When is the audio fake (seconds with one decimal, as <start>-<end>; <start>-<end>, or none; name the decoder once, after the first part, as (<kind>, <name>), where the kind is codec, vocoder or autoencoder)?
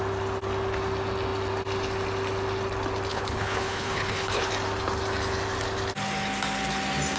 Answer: 3.1-4.5 (codec, HILCodec)